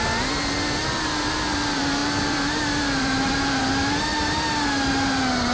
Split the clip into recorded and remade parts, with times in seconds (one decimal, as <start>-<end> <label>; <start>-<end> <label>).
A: 0.0-4.1 remade; 4.1-4.9 recorded; 4.9-5.5 remade